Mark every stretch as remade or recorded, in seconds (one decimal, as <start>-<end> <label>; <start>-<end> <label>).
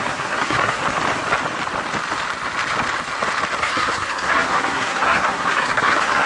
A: 0.0-0.8 remade; 0.8-3.6 recorded; 3.6-6.3 remade